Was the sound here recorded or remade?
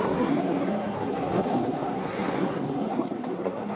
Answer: remade